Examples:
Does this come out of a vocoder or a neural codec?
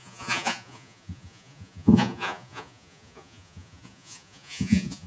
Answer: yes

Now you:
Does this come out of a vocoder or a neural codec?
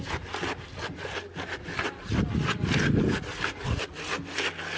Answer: no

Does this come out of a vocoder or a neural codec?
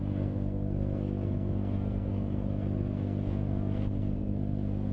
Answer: yes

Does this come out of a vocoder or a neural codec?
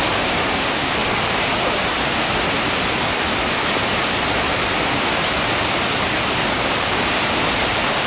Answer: no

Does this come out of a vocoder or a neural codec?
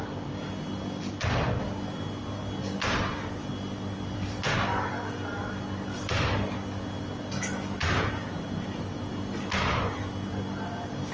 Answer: no